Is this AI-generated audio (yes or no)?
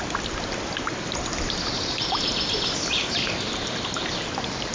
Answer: no